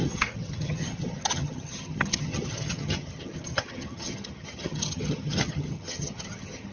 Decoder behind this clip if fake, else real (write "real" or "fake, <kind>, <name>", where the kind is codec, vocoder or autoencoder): fake, vocoder, HiFi-GAN